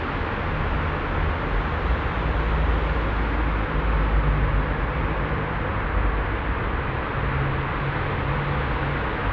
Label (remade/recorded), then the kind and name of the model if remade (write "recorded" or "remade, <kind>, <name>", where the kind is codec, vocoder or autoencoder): recorded